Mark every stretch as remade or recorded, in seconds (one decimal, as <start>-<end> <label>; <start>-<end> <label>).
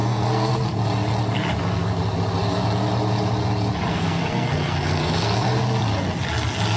0.0-0.5 remade; 0.5-3.9 recorded; 3.9-5.6 remade; 5.6-6.8 recorded